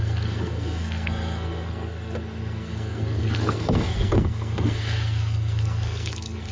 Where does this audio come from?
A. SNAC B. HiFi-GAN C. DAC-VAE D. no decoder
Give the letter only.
A